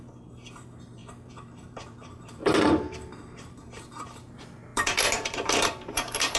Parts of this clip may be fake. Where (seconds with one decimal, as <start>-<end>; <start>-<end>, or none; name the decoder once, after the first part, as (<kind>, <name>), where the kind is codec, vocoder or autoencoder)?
0.0-6.4 (vocoder, BigVGAN v2)